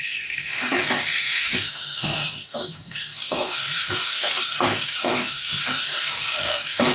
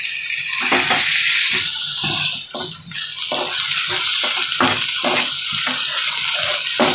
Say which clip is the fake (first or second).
first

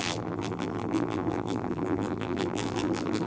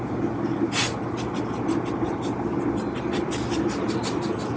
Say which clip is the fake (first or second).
first